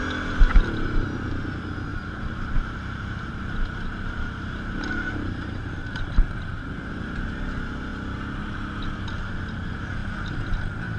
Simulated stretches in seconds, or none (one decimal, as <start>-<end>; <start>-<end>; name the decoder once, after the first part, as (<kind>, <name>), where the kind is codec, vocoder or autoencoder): 1.9-6.8 (vocoder, BigVGAN v2)